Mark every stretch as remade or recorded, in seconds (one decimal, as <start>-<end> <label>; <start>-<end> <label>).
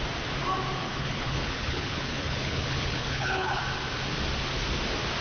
0.0-0.8 recorded; 0.8-3.6 remade; 3.6-5.2 recorded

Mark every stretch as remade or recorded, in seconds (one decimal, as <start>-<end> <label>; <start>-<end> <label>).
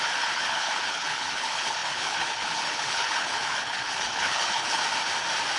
0.0-4.8 remade; 4.8-5.6 recorded